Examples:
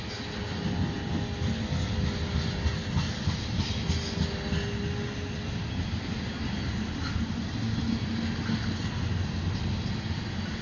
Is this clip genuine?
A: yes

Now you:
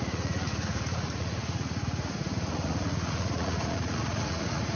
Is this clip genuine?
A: no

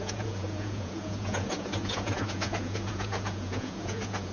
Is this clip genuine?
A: no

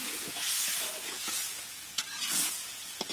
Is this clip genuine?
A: no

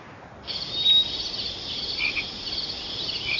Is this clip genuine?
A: yes